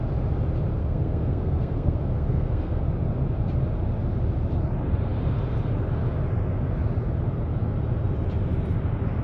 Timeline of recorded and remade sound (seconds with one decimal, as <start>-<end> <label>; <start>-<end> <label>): 0.0-0.8 recorded; 0.8-2.8 remade; 2.8-9.2 recorded